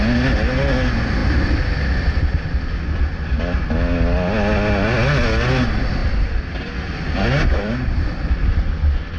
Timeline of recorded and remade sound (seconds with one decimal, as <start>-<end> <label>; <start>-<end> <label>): 0.0-9.2 recorded